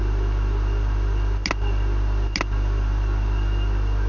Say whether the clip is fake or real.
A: real